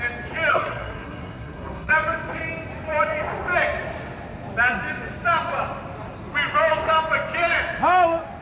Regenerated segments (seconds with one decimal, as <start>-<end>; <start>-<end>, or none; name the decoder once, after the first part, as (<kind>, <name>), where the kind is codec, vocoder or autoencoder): 0.5-1.9 (codec, SNAC)

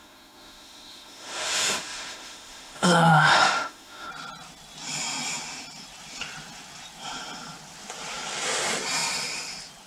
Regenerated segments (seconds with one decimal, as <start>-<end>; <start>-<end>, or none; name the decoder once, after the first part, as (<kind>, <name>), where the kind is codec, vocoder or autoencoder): 0.0-4.1 (autoencoder, DAC-VAE)

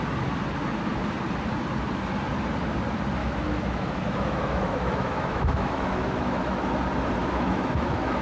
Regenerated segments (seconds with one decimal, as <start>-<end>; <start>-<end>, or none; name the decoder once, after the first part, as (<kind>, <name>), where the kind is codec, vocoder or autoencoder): 3.2-6.7 (autoencoder, DAC-VAE); 7.2-8.2